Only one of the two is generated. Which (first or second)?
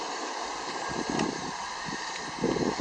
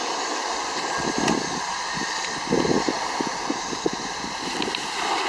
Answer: first